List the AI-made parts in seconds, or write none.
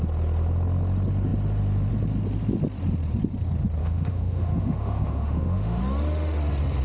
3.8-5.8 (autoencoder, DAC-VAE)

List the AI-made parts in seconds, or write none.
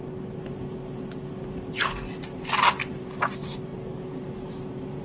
none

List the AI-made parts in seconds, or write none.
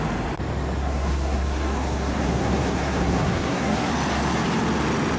0.8-3.9 (codec, SNAC)